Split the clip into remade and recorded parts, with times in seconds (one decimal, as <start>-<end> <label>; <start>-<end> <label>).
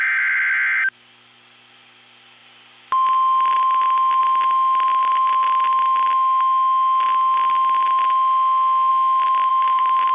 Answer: 0.0-9.5 recorded; 9.5-10.1 remade